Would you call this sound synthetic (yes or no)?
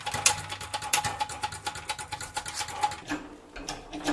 no